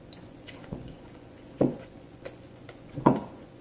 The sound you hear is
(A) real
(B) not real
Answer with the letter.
B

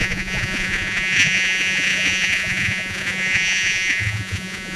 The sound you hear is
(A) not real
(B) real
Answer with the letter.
A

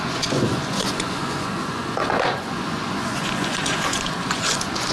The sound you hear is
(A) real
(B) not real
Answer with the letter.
B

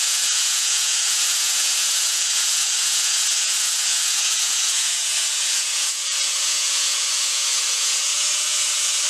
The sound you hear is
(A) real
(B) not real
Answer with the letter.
B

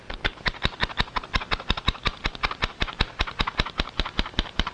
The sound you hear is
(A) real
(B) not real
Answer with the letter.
A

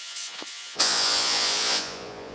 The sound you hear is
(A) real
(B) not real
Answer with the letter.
B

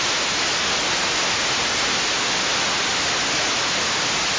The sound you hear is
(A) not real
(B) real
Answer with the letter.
B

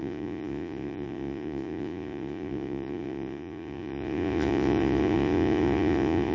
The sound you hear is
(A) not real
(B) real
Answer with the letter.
A